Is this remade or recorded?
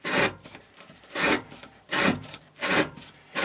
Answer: remade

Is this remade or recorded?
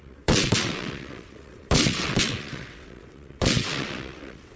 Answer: remade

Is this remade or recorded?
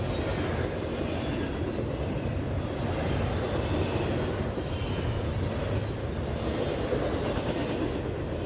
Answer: recorded